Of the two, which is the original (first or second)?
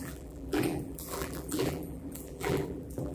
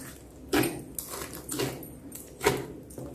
second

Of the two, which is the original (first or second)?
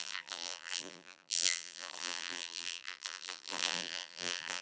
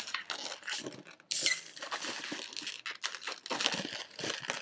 second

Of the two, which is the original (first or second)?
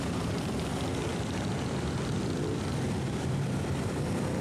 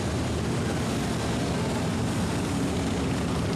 second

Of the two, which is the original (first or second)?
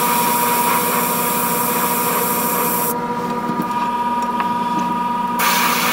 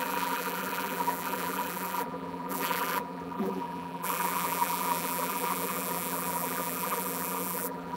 first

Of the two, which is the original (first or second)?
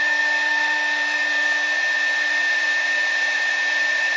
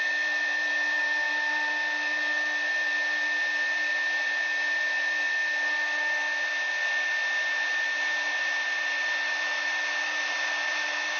second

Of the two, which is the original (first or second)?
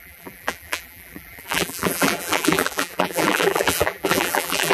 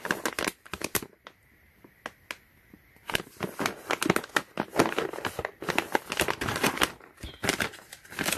second